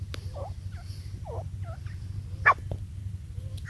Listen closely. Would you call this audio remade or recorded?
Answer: recorded